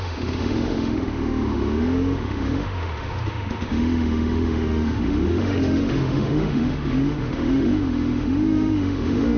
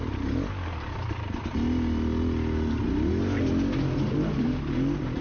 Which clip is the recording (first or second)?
second